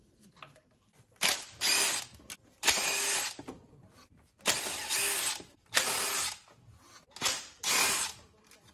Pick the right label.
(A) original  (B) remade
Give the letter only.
A